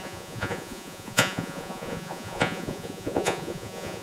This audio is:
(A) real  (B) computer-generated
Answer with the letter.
B